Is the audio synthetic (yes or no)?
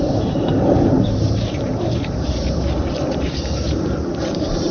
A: yes